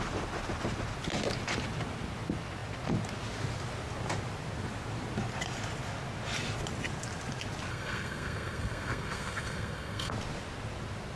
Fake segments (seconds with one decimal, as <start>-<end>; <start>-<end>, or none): 7.7-10.1